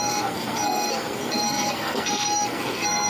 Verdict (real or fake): fake